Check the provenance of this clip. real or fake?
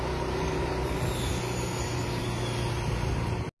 real